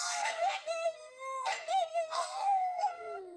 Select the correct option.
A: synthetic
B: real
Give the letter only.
A